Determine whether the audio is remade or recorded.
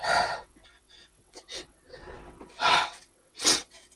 remade